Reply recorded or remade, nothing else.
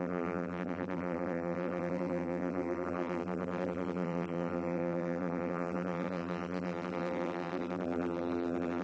remade